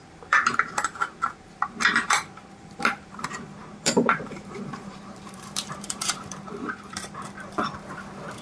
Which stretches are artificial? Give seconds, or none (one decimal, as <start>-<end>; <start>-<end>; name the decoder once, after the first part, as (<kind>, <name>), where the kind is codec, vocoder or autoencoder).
0.0-8.4 (vocoder, BigVGAN v2)